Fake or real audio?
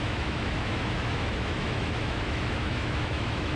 fake